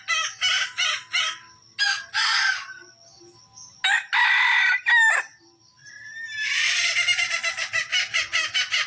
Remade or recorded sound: recorded